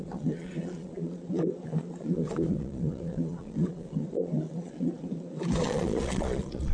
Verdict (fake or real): fake